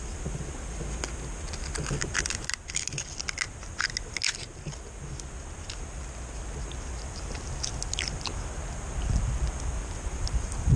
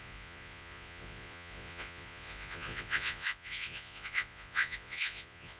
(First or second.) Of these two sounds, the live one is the first